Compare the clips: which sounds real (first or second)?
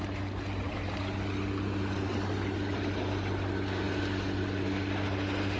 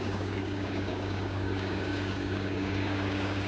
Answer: first